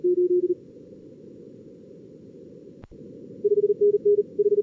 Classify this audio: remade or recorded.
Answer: recorded